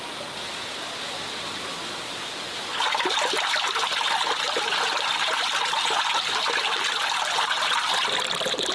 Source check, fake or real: real